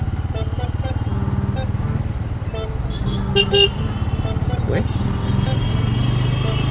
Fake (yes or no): no